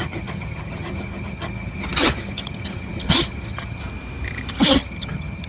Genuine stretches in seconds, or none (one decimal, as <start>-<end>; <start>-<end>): 3.8-4.7